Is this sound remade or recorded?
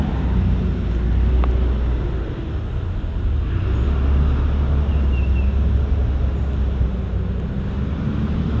recorded